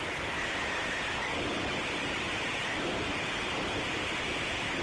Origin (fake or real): fake